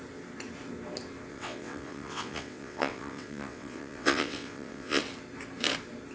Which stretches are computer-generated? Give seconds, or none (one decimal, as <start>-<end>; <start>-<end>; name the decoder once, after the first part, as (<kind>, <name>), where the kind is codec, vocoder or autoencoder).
1.3-5.0 (vocoder, WaveNeXt)